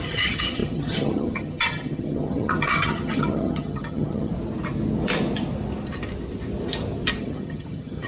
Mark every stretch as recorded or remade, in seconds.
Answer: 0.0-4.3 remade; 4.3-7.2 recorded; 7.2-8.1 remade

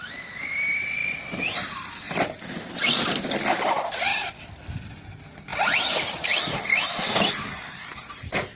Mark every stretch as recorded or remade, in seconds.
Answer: 0.0-1.0 recorded; 1.0-2.7 remade; 2.7-5.5 recorded; 5.5-7.1 remade; 7.1-8.6 recorded